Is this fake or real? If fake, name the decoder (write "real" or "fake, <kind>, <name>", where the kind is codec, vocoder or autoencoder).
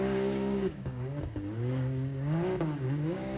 fake, codec, DAC